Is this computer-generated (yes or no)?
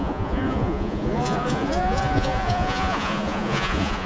yes